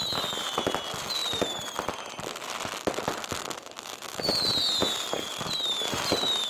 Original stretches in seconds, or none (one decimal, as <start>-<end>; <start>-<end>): 0.0-6.5